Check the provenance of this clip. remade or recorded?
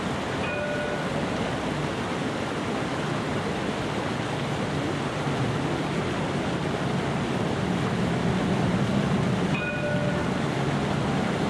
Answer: recorded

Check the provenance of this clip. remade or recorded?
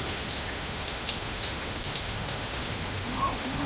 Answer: remade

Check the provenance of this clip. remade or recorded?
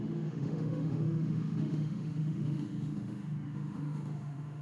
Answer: remade